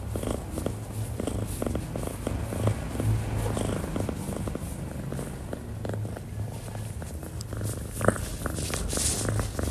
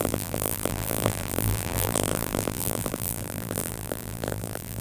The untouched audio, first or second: first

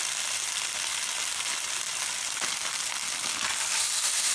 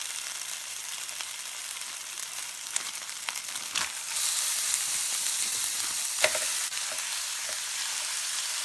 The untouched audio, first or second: first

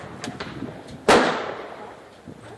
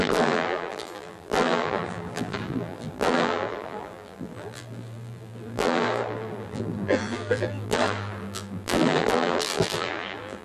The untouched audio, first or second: first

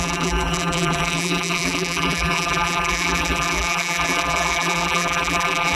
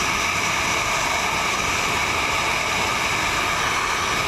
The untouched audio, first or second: second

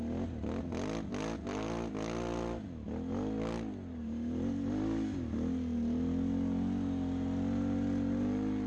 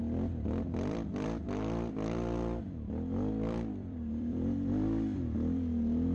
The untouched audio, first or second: first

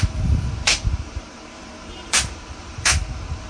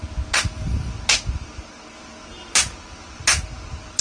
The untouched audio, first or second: second